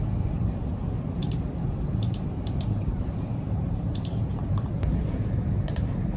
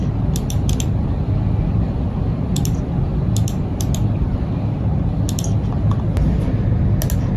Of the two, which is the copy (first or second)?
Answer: first